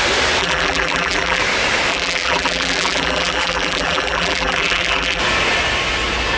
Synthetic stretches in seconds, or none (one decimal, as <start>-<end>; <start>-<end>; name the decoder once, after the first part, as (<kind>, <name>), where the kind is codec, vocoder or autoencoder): 0.4-1.4 (vocoder, BigVGAN v2); 1.9-5.2